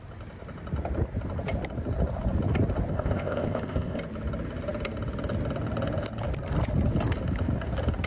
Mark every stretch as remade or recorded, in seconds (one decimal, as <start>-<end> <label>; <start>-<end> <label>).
0.0-2.9 recorded; 2.9-4.0 remade; 4.0-8.1 recorded